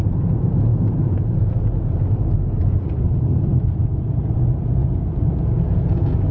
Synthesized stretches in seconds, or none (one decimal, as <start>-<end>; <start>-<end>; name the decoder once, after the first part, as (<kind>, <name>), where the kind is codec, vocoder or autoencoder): 0.0-6.3 (vocoder, Vocos)